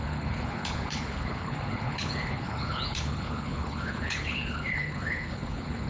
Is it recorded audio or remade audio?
remade